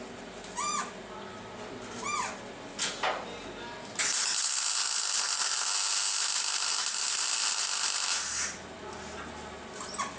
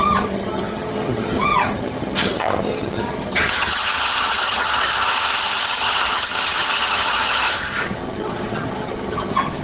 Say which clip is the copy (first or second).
second